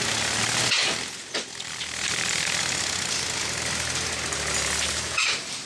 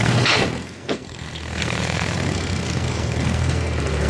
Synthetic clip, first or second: second